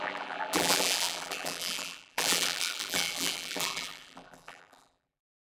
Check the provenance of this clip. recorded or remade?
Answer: remade